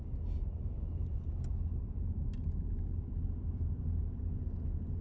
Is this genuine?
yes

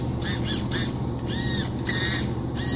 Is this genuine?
yes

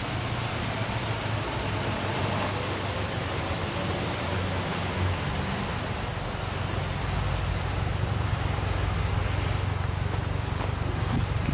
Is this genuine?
yes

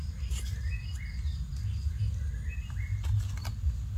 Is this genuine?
yes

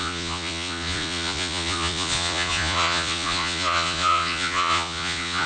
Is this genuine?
no